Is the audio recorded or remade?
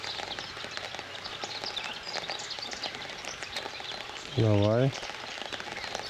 recorded